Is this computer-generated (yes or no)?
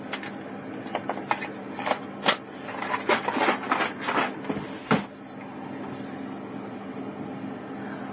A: no